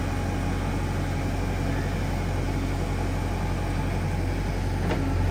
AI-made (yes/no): no